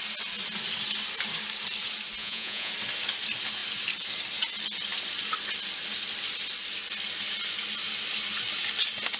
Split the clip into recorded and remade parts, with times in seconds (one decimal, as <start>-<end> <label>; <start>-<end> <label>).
0.0-2.2 recorded; 2.2-2.7 remade; 2.7-9.2 recorded